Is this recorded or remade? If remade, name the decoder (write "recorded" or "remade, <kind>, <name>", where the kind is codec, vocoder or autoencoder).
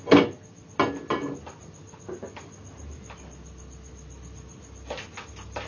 recorded